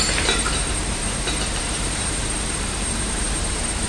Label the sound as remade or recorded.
remade